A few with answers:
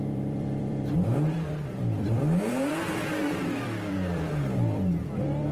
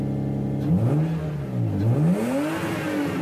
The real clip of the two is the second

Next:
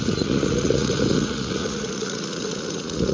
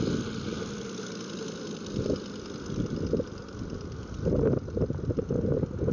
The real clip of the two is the second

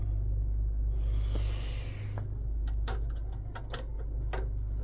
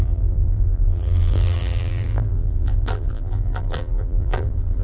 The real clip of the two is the first